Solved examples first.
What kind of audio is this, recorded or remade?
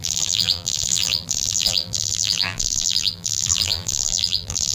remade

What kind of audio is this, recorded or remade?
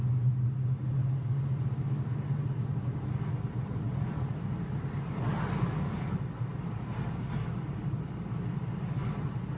recorded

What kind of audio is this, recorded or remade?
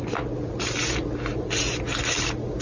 recorded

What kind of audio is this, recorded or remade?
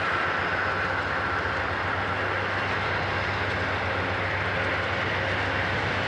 recorded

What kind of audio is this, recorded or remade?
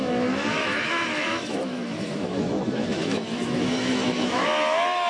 remade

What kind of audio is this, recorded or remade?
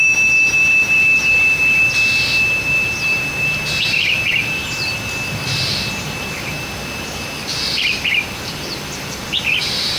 remade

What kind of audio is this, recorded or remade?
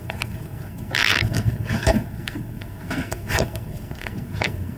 remade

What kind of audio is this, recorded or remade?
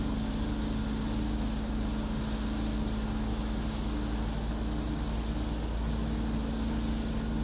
recorded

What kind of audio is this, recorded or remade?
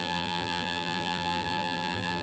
remade